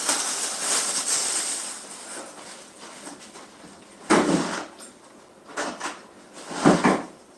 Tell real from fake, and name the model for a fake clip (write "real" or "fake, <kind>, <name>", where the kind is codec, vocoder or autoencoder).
real